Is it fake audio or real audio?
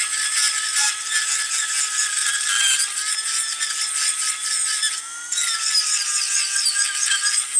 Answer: real